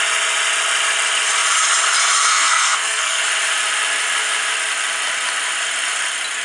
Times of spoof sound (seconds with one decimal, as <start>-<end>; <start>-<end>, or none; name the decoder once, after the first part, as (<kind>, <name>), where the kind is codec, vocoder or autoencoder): 2.3-3.2 (codec, SNAC)